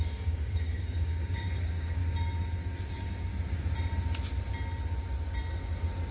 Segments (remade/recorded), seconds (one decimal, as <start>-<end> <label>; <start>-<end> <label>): 0.0-2.0 remade; 2.0-2.9 recorded; 2.9-3.3 remade; 3.3-6.1 recorded